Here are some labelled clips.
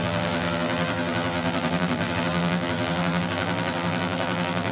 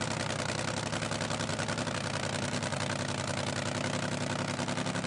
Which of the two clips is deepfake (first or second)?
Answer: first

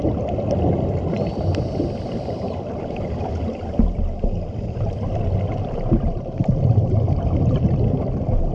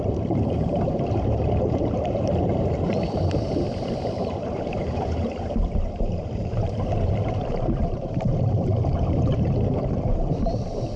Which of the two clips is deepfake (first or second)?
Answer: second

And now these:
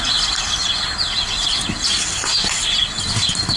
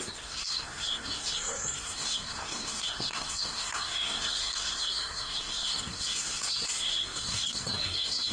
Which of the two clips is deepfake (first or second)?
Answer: second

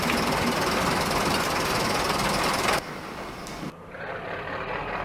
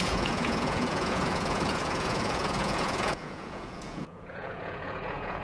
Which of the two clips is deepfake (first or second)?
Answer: second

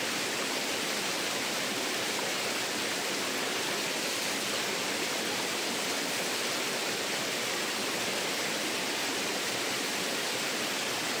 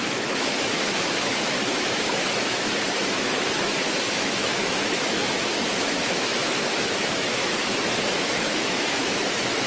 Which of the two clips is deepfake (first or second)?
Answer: second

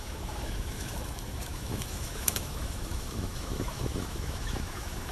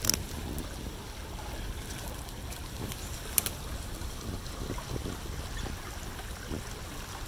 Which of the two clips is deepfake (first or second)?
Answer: first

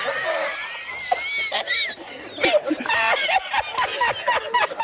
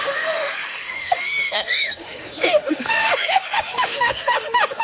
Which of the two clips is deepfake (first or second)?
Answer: second